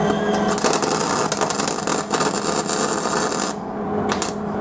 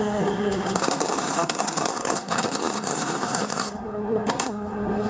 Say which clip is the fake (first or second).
second